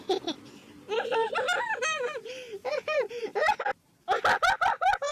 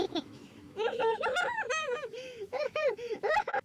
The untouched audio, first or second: first